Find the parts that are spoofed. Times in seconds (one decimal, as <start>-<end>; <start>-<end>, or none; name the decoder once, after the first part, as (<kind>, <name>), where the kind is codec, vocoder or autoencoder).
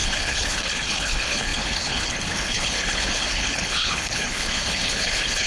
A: 0.0-5.5 (codec, HILCodec)